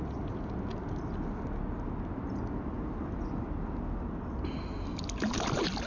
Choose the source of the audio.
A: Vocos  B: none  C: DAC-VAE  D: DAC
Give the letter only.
B